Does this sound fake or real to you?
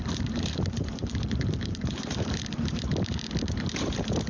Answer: fake